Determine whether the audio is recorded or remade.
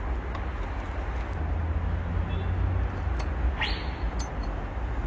recorded